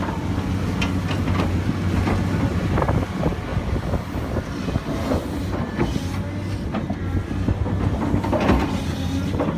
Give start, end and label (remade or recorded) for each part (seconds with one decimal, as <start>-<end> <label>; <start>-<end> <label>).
0.0-2.5 recorded; 2.5-3.1 remade; 3.1-9.6 recorded